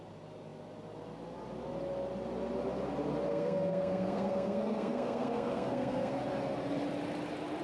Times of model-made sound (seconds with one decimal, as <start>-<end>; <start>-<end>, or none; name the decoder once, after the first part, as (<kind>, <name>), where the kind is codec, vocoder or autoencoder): 3.3-6.2 (codec, SNAC)